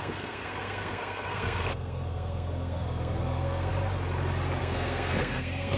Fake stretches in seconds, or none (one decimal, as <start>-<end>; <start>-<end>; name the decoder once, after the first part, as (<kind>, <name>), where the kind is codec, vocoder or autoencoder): 0.0-3.7 (codec, SNAC); 4.6-5.8